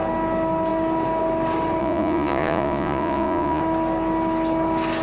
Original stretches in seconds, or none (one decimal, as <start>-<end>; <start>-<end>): 0.0-1.8; 3.6-5.0